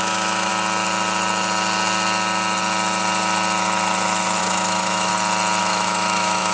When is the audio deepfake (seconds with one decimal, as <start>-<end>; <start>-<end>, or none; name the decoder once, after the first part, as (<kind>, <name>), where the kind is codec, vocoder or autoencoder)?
0.0-0.5 (autoencoder, DAC-VAE); 4.4-5.1; 5.6-6.5